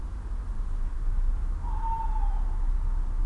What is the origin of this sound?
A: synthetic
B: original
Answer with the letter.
B